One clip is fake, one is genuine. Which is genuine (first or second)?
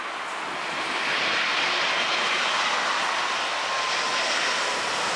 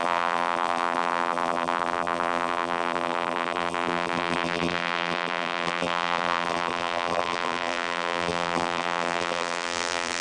first